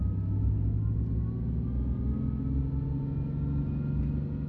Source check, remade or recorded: recorded